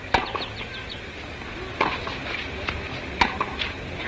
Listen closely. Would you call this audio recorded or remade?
remade